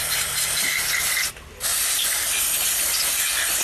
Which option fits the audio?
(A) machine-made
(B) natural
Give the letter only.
B